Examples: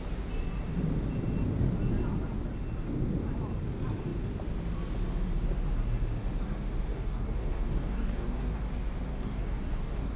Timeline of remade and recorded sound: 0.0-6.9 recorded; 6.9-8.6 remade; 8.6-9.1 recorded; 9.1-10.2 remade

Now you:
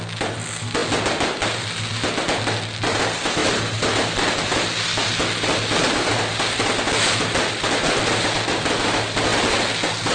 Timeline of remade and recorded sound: 0.0-10.1 recorded

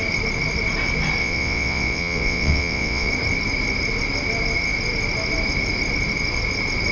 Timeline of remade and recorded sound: 0.0-1.2 recorded; 1.2-3.1 remade; 3.1-6.9 recorded

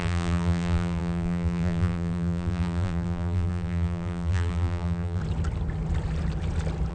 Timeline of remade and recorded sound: 0.0-5.2 remade; 5.2-6.9 recorded